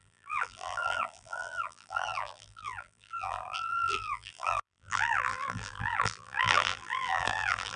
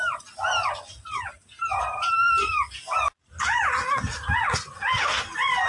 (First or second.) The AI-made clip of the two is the first